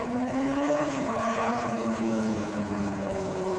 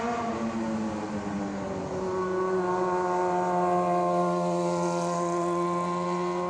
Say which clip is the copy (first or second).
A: first